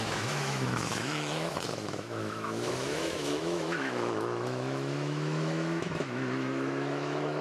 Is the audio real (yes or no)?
no